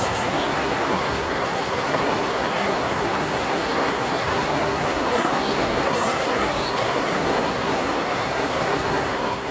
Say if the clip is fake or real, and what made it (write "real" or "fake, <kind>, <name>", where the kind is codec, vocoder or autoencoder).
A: fake, codec, SNAC